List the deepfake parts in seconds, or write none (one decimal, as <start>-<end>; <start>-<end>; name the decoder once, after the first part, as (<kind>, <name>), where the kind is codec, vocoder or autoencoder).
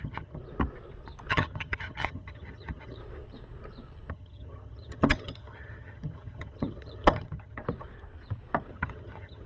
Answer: 0.0-0.4 (vocoder, HiFi-GAN); 1.3-3.0; 4.1-7.6; 8.7-9.5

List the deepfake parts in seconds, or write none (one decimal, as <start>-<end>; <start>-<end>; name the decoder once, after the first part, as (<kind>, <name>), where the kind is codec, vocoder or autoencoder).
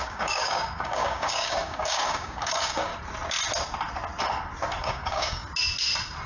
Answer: 0.0-2.9 (codec, DAC); 4.8-5.4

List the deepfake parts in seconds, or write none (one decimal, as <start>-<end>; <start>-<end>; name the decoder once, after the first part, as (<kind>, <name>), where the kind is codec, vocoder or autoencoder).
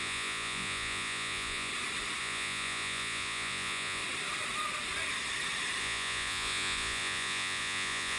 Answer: 0.0-1.7 (vocoder, Vocos); 2.2-4.0; 5.8-8.2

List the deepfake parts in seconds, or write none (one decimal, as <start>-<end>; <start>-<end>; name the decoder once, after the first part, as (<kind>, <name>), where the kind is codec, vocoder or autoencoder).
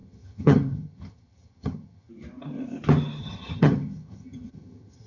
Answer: 0.0-2.1 (vocoder, HiFi-GAN); 3.2-5.1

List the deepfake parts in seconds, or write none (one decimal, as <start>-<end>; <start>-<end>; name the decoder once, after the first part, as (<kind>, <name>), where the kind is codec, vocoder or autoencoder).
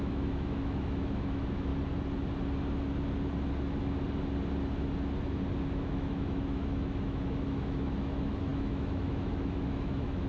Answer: 0.0-1.7 (autoencoder, DAC-VAE); 5.6-10.3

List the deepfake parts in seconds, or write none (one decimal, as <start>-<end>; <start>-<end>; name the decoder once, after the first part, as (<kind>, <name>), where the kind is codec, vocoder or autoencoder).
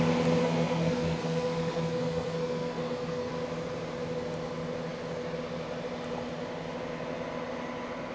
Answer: 0.4-3.3 (codec, SNAC)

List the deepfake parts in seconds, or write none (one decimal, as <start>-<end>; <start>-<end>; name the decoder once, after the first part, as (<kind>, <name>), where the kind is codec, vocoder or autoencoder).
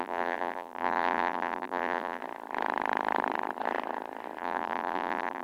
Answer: 0.0-2.2 (vocoder, BigVGAN v2); 4.4-5.4